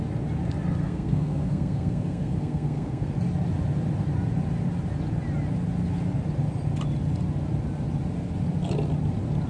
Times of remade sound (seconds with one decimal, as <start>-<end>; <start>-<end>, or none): 0.8-3.1